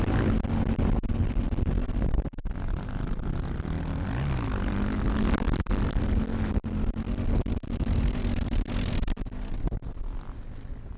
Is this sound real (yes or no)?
yes